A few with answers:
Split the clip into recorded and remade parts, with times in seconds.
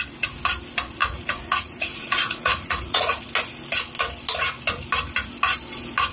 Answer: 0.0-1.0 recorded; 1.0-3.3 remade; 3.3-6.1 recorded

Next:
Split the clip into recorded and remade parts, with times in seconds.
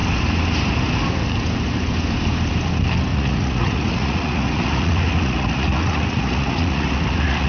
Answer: 0.0-3.1 recorded; 3.1-7.5 remade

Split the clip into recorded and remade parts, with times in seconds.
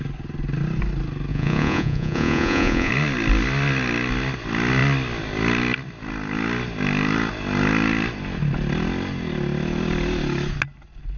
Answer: 0.0-1.3 recorded; 1.3-2.9 remade; 2.9-11.2 recorded